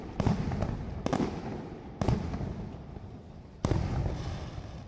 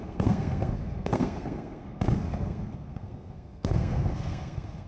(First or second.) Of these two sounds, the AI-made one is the second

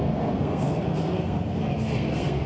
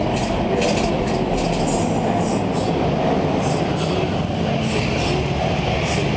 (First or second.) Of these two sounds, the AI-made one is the first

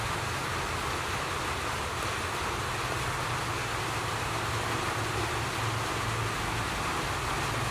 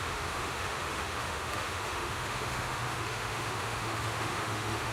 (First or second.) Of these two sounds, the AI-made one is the second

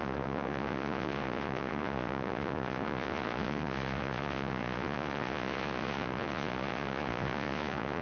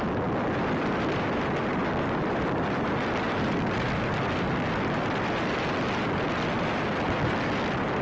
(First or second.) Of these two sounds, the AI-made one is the first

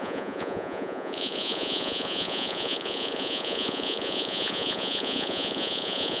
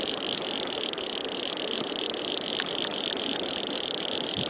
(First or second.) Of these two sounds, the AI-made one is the first